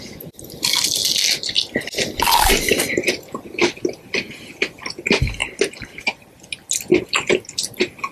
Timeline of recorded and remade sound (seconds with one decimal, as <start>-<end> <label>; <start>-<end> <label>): 0.0-1.0 remade; 1.0-1.8 recorded; 1.8-5.4 remade; 5.4-7.0 recorded; 7.0-8.1 remade